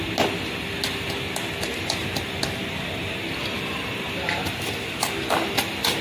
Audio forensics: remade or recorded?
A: recorded